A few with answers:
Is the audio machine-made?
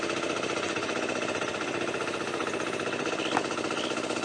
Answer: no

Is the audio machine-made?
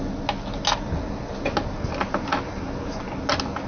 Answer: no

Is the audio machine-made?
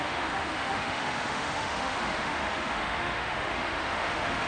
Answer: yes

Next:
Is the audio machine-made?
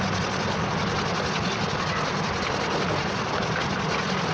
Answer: no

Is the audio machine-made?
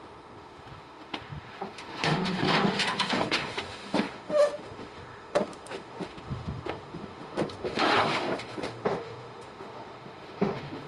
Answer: yes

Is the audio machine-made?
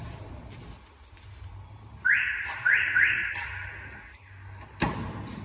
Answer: no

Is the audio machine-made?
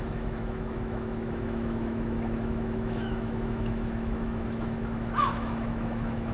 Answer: yes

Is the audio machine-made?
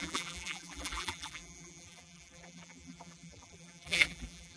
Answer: yes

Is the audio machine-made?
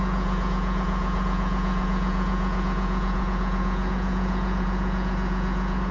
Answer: yes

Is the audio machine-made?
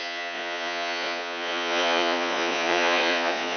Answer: yes